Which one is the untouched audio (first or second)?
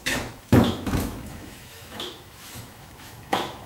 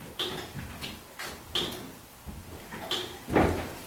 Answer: second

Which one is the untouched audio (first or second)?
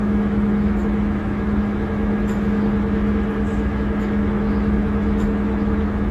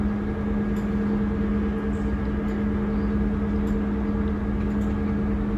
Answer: second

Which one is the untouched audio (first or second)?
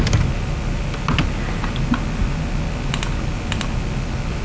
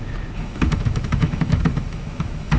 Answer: first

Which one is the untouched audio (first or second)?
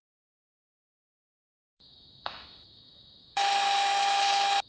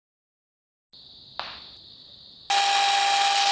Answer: second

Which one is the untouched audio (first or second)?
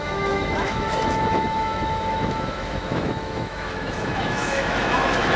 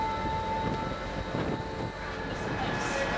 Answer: second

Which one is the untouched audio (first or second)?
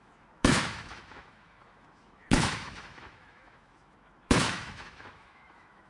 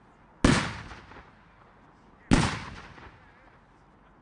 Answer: second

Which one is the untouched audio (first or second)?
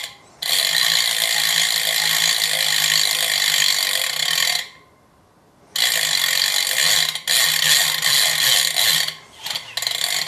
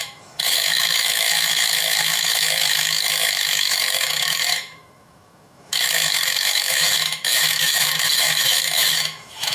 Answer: first